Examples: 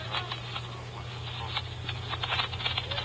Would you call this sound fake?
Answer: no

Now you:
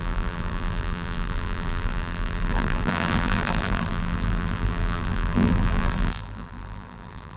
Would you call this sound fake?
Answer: yes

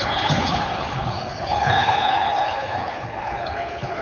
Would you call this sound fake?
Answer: yes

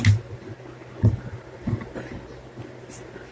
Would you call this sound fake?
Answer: no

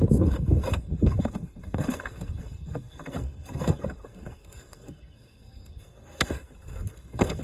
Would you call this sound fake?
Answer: yes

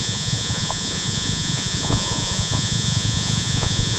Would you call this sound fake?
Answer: yes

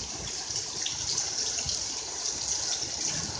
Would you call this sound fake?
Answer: no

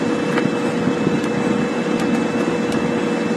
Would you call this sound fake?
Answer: no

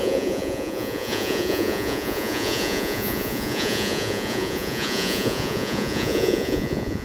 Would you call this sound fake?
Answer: yes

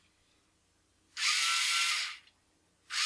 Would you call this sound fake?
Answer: no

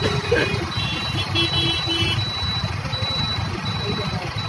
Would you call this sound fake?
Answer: no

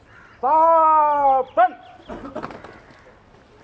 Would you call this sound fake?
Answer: no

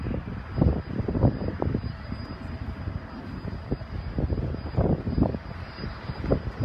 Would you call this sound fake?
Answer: no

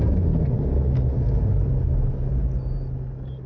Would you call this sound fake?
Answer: no